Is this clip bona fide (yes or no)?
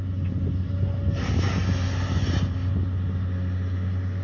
yes